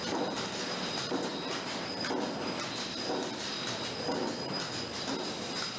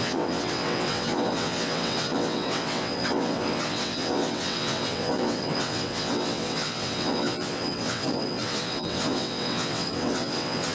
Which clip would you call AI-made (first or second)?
second